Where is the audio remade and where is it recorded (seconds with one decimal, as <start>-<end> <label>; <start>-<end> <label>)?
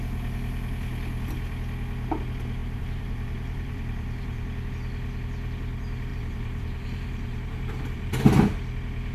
0.0-2.6 recorded; 2.6-4.7 remade; 4.7-6.1 recorded; 6.1-8.1 remade; 8.1-9.1 recorded